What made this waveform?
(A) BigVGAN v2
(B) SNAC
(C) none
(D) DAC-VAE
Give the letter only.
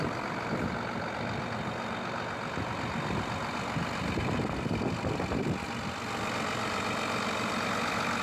C